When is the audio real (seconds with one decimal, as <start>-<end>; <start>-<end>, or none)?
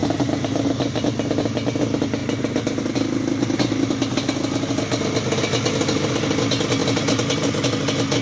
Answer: 1.0-6.8; 7.5-8.2